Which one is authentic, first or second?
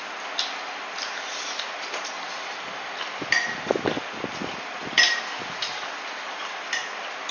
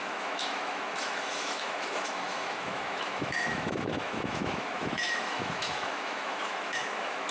first